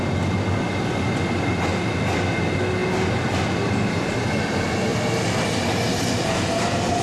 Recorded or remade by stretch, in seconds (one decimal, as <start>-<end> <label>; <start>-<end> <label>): 0.0-7.0 recorded